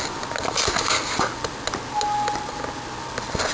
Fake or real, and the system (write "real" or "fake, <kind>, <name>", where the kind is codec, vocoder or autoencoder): real